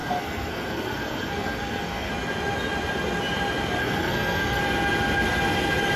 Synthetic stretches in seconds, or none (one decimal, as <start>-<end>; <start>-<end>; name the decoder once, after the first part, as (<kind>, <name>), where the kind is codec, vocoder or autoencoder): 0.0-2.1 (codec, SNAC); 3.8-4.6